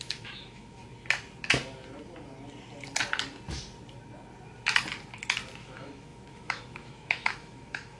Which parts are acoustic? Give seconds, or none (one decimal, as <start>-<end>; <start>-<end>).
0.8-5.6